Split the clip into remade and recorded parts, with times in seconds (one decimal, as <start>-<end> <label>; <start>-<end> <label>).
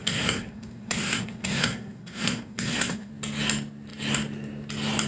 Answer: 0.0-3.1 remade; 3.1-5.1 recorded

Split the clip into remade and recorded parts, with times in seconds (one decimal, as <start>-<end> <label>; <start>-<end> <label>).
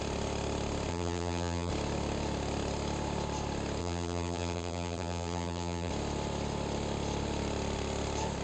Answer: 0.0-0.9 recorded; 0.9-1.7 remade; 1.7-3.8 recorded; 3.8-5.9 remade; 5.9-8.4 recorded